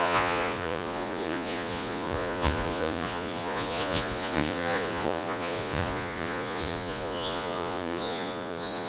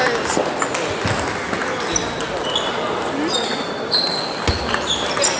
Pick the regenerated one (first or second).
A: first